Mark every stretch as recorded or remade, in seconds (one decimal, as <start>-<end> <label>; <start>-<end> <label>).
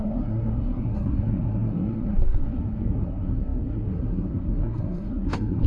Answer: 0.0-5.7 remade